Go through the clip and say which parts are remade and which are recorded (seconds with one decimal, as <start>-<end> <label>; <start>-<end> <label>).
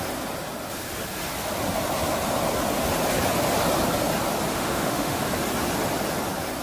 0.0-4.5 recorded; 4.5-5.2 remade; 5.2-6.6 recorded